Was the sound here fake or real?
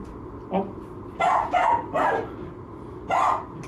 real